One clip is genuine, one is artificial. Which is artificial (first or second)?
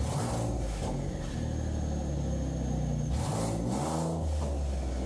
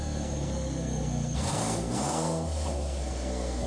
second